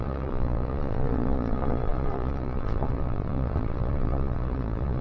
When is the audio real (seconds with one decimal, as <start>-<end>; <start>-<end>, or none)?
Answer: none